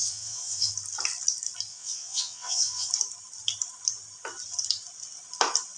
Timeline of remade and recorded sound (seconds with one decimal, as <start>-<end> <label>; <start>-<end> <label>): 0.0-0.7 remade; 0.7-1.7 recorded; 1.7-2.9 remade; 2.9-5.8 recorded